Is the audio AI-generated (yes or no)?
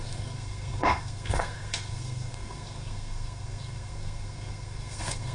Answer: yes